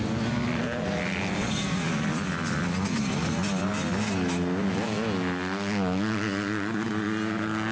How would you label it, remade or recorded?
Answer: recorded